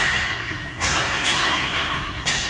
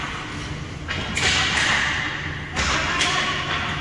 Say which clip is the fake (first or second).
first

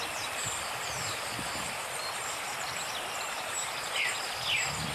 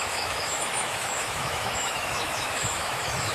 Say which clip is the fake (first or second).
second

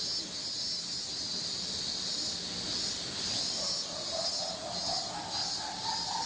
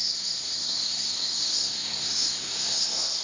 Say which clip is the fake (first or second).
second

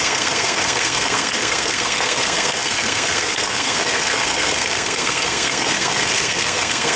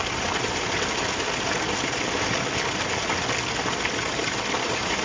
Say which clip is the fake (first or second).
first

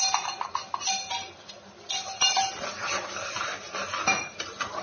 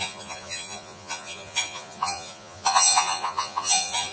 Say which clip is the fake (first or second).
second